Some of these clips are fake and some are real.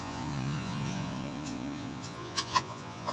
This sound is fake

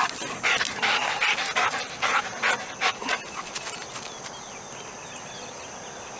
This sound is real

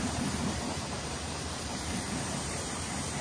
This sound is fake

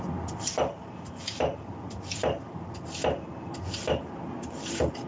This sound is real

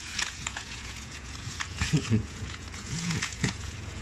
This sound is fake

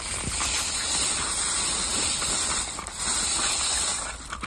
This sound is real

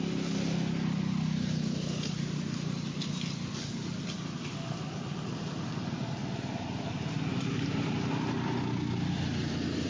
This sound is real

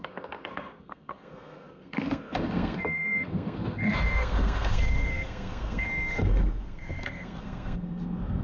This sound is fake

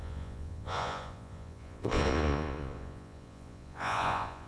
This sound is fake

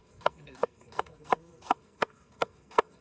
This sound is fake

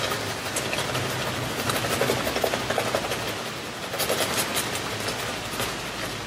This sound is real